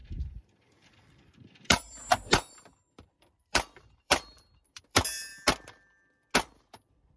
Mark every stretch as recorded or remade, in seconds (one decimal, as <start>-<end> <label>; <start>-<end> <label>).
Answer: 0.0-5.3 remade; 5.3-6.6 recorded; 6.6-7.2 remade

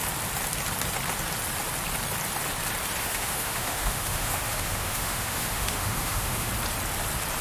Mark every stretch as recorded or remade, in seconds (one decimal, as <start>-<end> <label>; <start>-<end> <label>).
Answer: 0.0-3.0 recorded; 3.0-6.5 remade; 6.5-7.4 recorded

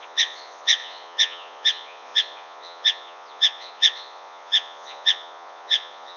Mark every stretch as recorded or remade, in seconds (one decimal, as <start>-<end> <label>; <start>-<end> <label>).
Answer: 0.0-6.2 remade

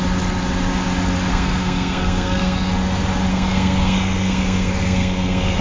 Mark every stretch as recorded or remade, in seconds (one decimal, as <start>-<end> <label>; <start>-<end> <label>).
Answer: 0.0-1.3 recorded; 1.3-2.7 remade; 2.7-3.3 recorded; 3.3-5.6 remade